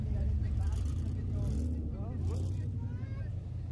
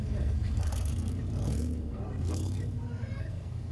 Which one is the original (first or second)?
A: first